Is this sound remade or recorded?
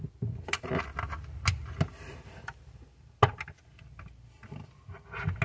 recorded